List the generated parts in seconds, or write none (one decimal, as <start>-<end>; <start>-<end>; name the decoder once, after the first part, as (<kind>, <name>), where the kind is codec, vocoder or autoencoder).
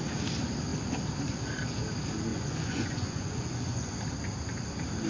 2.3-4.0 (vocoder, Vocos)